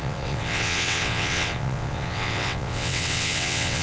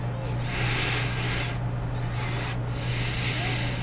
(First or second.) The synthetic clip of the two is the first